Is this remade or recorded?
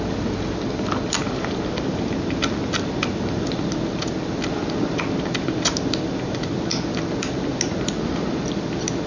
recorded